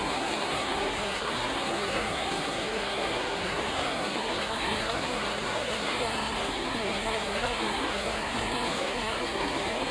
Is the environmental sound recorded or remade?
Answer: remade